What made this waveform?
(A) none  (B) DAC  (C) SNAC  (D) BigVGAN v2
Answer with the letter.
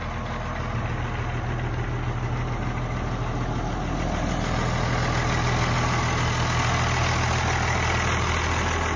A